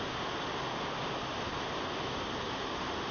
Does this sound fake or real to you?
real